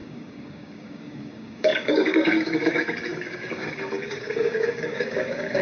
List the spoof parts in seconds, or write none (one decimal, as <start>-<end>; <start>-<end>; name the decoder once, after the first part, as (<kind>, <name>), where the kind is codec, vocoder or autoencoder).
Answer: 0.0-5.6 (codec, DAC)